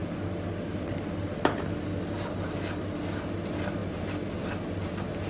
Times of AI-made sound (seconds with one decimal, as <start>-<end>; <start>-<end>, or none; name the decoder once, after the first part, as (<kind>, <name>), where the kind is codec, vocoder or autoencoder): none

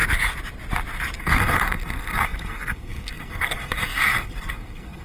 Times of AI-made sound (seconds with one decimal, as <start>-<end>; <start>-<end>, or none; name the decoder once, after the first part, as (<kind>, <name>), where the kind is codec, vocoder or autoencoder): 1.2-5.0 (codec, SNAC)

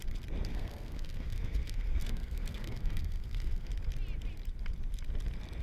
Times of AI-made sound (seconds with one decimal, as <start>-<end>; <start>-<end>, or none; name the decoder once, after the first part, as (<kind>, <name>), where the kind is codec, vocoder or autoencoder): 0.5-3.7 (codec, SNAC)

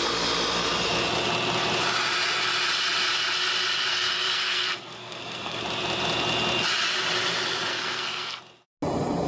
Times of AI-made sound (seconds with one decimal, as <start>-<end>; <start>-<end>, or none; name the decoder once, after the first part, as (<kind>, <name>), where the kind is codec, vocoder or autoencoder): 3.9-5.6 (codec, SNAC); 7.7-8.4